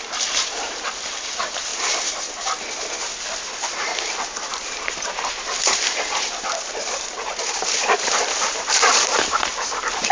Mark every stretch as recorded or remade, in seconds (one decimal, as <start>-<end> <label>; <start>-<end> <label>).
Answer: 0.0-10.1 remade